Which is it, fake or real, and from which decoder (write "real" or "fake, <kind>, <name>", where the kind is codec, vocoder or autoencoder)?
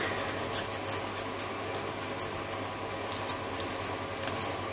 real